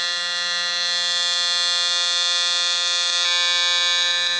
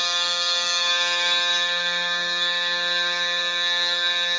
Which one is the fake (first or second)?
second